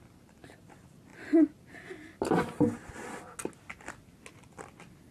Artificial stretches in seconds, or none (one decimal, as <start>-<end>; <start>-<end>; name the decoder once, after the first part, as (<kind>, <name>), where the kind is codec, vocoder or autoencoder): none